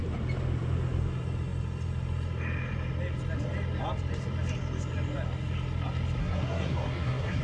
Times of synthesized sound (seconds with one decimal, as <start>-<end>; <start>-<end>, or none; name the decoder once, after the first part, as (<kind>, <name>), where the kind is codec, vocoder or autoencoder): 6.2-7.4 (codec, SNAC)